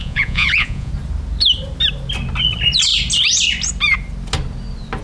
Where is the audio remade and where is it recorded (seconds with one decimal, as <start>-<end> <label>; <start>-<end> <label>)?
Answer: 0.0-0.9 remade; 0.9-5.0 recorded